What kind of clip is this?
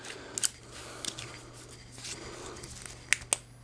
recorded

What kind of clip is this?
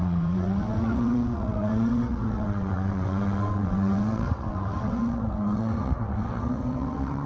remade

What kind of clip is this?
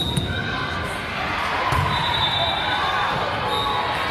recorded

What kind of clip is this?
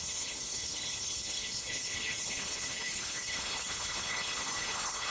remade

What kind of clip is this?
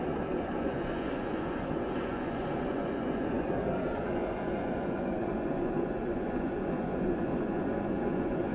remade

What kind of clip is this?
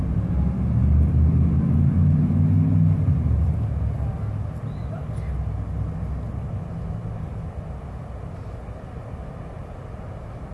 recorded